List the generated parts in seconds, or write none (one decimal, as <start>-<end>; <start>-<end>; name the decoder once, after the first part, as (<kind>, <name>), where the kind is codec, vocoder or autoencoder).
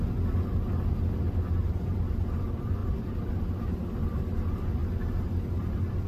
2.8-3.4 (vocoder, BigVGAN v2)